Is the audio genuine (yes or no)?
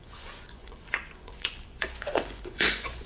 no